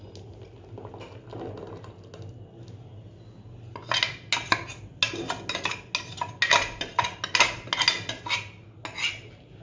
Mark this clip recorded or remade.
recorded